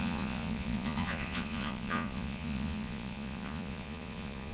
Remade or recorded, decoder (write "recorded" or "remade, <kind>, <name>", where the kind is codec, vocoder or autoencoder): remade, vocoder, Vocos